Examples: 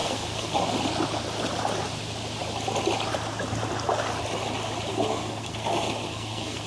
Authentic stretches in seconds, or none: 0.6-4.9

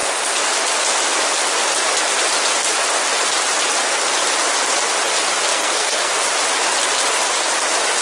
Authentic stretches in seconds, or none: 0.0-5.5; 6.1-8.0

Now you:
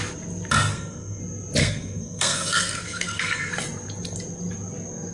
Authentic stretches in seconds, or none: 0.0-0.7; 1.2-1.6; 3.5-5.1

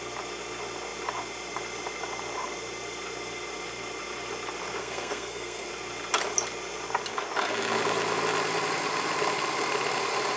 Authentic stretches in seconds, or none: 0.0-4.8; 5.7-10.4

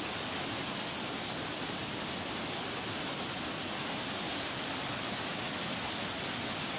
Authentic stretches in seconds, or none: 0.0-6.8